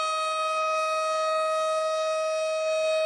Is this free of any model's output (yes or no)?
yes